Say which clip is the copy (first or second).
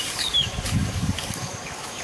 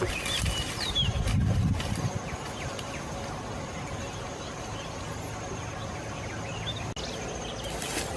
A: first